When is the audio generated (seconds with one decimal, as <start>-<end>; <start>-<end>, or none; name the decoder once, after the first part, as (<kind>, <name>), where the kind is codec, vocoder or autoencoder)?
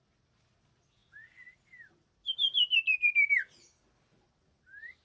none